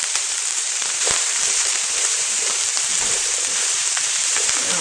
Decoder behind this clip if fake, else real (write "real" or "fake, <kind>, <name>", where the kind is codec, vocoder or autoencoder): fake, vocoder, BigVGAN v2